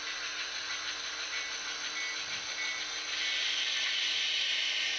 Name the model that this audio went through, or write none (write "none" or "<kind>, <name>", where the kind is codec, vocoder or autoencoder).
none